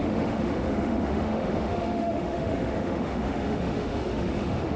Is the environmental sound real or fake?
fake